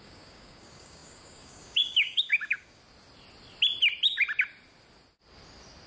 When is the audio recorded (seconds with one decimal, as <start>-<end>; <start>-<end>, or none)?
2.8-5.9